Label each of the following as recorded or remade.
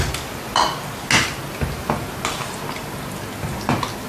recorded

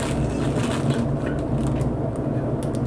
recorded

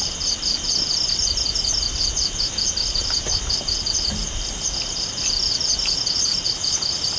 recorded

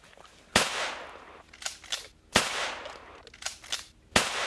recorded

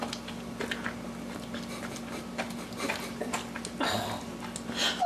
recorded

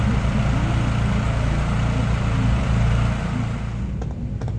recorded